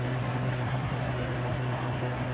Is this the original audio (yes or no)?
no